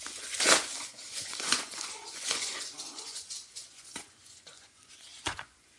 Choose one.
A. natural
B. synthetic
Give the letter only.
B